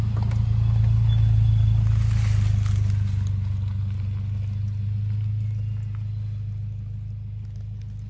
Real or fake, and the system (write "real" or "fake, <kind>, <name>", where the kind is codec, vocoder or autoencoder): real